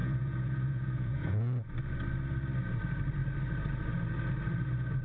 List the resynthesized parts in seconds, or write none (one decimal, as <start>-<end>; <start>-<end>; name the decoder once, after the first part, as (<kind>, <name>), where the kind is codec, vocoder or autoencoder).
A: 0.0-1.7 (vocoder, Vocos)